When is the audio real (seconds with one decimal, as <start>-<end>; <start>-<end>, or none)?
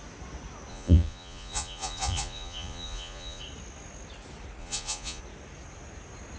0.0-0.7; 3.4-4.6; 5.2-6.4